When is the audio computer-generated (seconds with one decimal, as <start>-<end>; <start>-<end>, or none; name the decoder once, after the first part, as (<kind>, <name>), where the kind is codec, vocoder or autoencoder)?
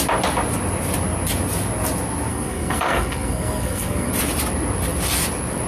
2.3-4.1 (codec, SNAC)